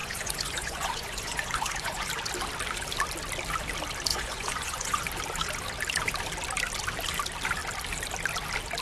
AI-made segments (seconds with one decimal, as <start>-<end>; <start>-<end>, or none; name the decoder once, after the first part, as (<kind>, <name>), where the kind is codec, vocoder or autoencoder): 0.0-2.1 (vocoder, Vocos); 4.1-5.1